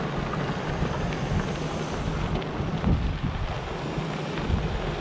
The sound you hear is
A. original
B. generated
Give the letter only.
A